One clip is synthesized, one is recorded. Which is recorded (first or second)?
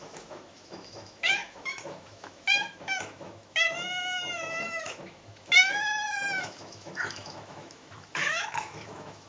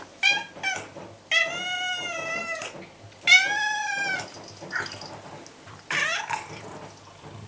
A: second